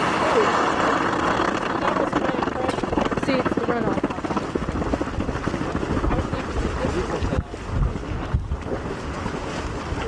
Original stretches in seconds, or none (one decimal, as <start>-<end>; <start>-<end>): 0.0-10.1